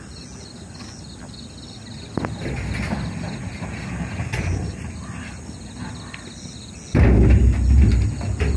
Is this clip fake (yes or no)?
no